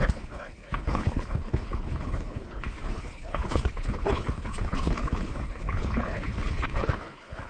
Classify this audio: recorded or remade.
remade